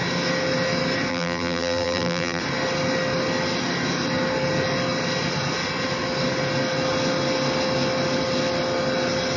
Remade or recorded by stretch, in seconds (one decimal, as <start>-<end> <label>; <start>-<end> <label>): 0.0-1.1 recorded; 1.1-2.4 remade; 2.4-9.4 recorded

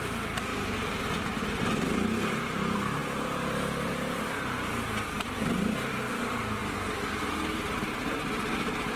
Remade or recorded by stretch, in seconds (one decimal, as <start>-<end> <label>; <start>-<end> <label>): 0.0-0.5 remade; 0.5-1.2 recorded; 1.2-6.6 remade; 6.6-7.9 recorded; 7.9-9.0 remade

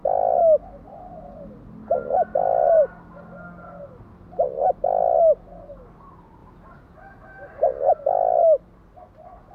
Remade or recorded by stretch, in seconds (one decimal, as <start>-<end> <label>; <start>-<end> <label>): 0.0-9.5 recorded